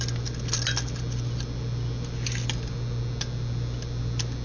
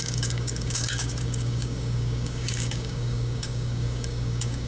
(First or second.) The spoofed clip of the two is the second